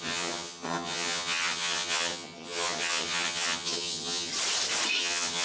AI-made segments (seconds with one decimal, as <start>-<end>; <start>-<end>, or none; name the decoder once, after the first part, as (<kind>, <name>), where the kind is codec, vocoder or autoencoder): 0.0-4.3 (vocoder, HiFi-GAN); 5.0-5.4